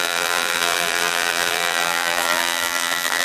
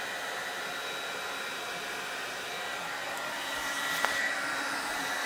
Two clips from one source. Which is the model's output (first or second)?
first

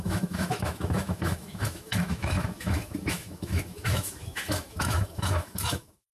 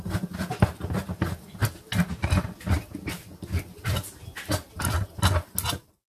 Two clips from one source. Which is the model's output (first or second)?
first